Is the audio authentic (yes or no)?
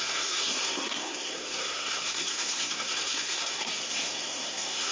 no